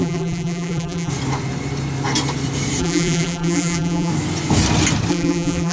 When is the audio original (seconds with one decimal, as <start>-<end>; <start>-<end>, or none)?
1.1-2.8; 4.1-5.1

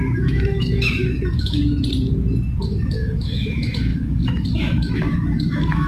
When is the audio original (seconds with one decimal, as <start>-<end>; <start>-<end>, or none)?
1.6-2.7

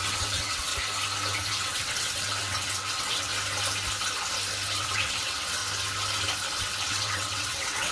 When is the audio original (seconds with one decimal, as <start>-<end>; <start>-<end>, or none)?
0.7-1.5; 3.3-4.8; 5.6-6.6